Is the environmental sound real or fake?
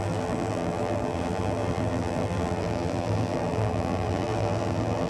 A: fake